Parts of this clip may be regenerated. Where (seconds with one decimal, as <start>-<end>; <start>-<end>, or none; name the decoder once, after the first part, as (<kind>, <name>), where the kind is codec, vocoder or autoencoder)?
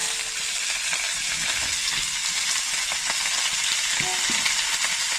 0.0-0.8 (vocoder, BigVGAN v2); 2.2-3.7